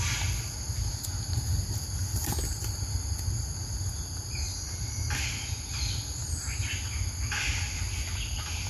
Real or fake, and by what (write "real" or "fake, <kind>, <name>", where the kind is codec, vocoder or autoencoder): real